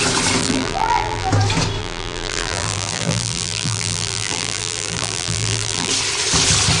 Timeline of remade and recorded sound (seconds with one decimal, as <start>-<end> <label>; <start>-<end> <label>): 0.0-0.4 recorded; 0.4-1.3 remade; 1.3-1.8 recorded; 1.8-5.9 remade; 5.9-6.8 recorded